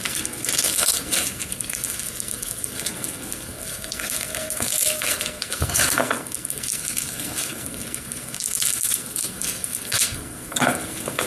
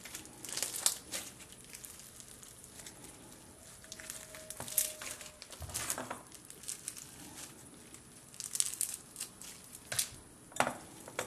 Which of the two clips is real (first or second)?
second